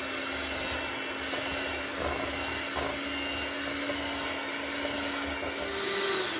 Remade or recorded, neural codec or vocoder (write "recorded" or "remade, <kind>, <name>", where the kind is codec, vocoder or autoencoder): recorded